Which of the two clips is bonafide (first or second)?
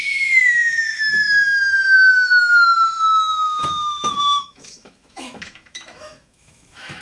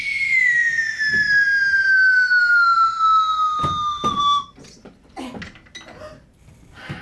second